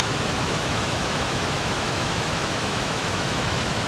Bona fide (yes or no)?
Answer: no